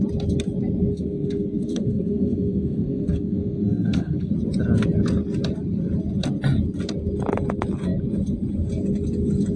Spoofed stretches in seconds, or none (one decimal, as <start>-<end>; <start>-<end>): 0.9-4.3